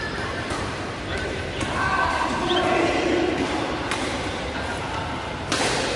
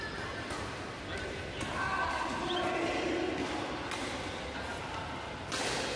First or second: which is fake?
first